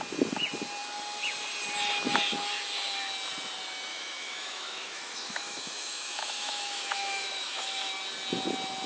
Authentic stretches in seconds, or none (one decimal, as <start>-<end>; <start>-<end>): 0.0-3.9; 7.9-8.9